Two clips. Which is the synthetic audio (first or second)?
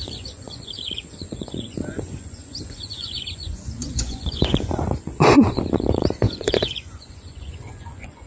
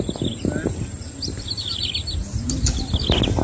first